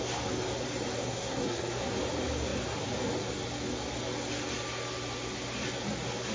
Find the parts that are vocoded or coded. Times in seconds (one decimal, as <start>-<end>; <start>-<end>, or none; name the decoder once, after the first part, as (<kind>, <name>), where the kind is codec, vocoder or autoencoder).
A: 1.0-1.9 (codec, SNAC)